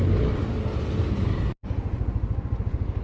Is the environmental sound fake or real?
real